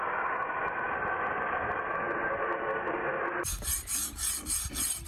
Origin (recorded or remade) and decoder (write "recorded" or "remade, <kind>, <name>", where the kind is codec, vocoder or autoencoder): recorded